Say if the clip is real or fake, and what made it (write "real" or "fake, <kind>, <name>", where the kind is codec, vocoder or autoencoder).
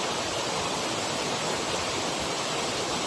real